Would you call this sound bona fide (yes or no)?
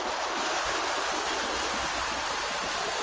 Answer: yes